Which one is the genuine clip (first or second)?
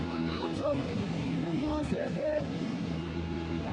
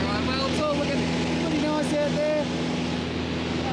second